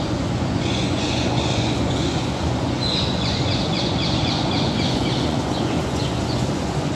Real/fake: fake